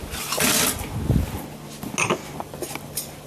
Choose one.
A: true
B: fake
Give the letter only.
A